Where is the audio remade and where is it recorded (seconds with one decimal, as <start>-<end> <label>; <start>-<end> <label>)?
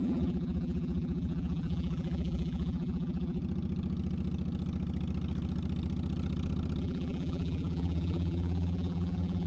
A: 0.0-3.4 remade; 3.4-6.8 recorded; 6.8-9.5 remade